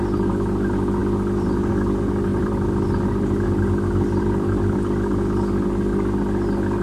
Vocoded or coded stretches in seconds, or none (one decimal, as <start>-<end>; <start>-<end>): 2.3-4.7